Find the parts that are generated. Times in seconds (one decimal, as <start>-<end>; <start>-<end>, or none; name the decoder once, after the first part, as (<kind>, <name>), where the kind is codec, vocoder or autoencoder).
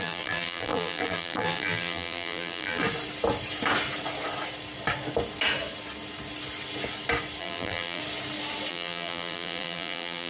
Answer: 0.0-2.8 (vocoder, BigVGAN v2); 7.4-8.0; 8.7-10.3